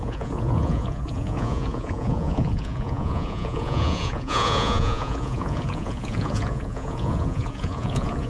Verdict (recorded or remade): remade